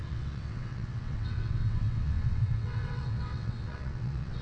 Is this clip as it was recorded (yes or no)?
no